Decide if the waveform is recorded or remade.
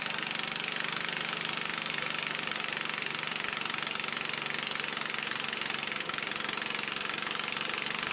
recorded